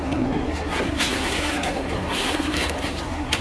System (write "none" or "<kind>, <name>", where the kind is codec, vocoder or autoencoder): codec, SNAC